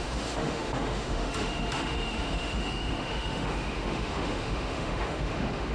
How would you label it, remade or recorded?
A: remade